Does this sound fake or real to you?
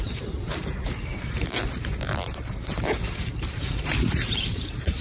fake